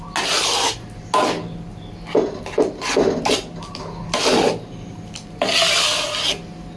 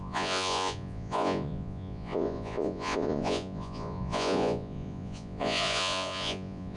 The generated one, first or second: second